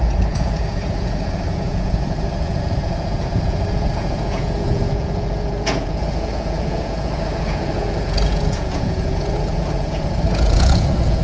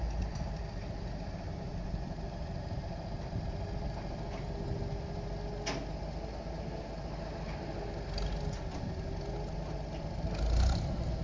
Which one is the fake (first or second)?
first